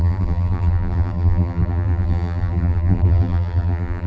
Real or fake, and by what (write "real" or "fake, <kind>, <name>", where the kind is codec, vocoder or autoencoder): fake, vocoder, BigVGAN v2